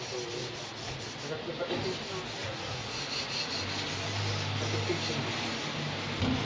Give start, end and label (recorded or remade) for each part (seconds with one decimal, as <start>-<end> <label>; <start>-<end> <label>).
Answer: 0.0-0.4 recorded; 0.4-1.0 remade; 1.0-2.4 recorded; 2.4-3.4 remade; 3.4-6.4 recorded